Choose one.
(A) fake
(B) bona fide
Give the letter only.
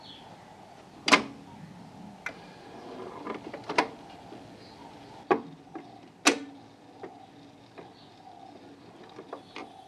B